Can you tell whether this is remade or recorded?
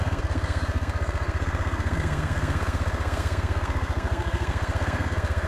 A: remade